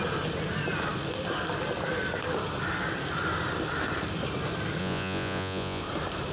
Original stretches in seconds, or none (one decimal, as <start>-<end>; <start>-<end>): 0.0-4.8; 5.8-6.3